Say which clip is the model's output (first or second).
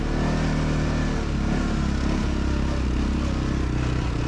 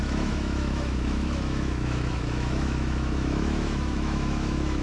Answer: second